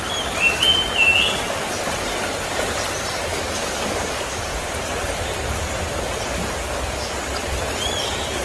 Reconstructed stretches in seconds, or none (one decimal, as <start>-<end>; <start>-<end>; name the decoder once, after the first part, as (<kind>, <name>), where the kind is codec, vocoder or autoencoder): 3.3-4.4 (codec, DAC)